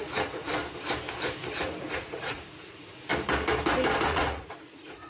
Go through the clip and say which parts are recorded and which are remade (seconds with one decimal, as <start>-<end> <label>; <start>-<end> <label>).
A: 0.0-0.6 remade; 0.6-1.6 recorded; 1.6-3.1 remade; 3.1-4.1 recorded; 4.1-5.1 remade